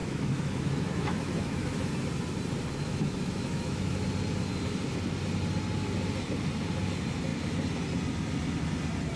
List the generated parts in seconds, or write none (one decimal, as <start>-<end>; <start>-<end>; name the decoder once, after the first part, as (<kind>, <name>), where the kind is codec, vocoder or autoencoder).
0.0-1.9 (autoencoder, DAC-VAE); 2.8-3.9